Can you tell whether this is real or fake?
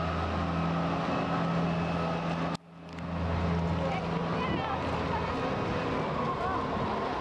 real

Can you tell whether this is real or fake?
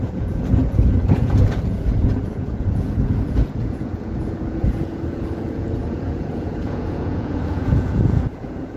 fake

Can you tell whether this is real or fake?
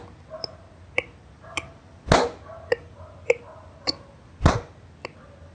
real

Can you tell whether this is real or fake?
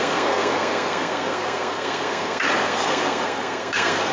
fake